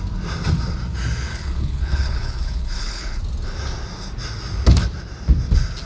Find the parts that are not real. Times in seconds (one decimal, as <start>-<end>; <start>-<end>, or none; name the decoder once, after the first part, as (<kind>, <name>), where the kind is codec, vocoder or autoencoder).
1.3-3.2 (codec, HILCodec)